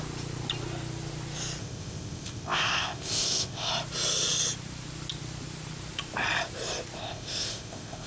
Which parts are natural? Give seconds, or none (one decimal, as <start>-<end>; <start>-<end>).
0.0-1.6; 3.7-7.0